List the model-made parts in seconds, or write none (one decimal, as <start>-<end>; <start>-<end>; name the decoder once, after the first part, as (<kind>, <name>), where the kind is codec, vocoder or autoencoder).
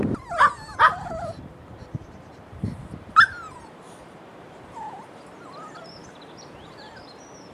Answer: 0.9-5.2 (vocoder, BigVGAN v2); 6.0-7.0